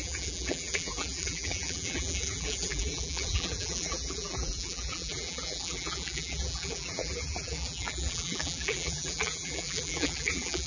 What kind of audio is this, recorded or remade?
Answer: remade